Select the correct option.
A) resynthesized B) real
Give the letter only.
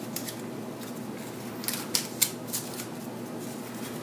B